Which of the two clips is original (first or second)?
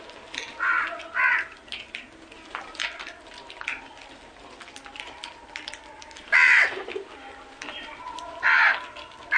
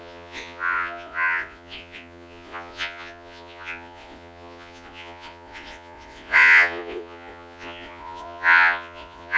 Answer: first